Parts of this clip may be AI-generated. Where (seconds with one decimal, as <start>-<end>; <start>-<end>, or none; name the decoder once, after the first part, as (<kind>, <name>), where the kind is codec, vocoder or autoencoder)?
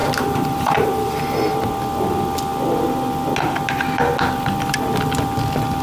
0.0-1.7 (vocoder, BigVGAN v2)